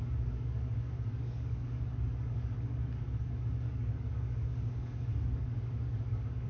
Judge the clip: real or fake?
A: fake